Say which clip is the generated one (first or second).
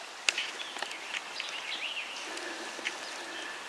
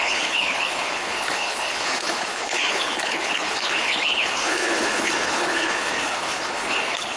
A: second